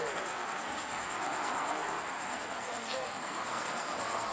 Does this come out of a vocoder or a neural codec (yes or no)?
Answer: yes